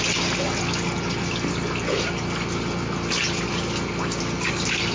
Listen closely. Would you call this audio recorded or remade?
recorded